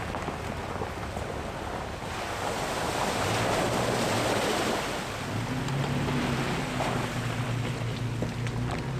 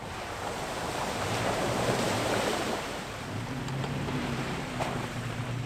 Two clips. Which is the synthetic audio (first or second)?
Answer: second